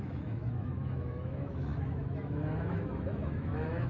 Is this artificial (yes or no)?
yes